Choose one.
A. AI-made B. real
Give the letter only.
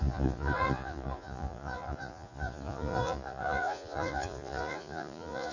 A